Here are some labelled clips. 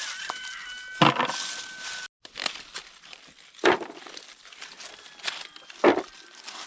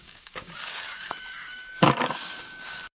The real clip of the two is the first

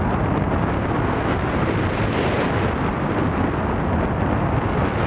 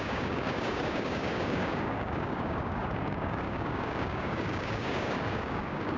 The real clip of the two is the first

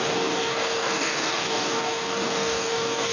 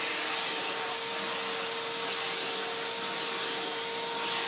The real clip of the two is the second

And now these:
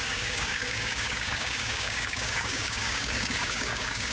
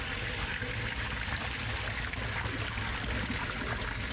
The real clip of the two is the second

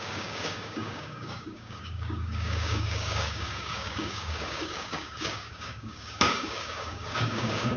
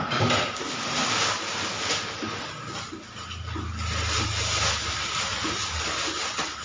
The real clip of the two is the second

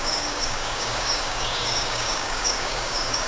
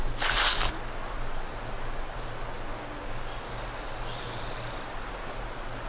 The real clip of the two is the second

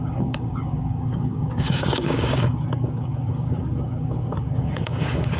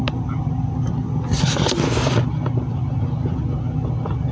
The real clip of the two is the second